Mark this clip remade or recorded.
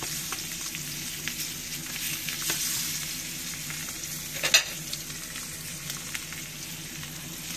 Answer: recorded